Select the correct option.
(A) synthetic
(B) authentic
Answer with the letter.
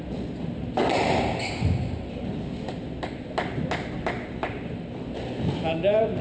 B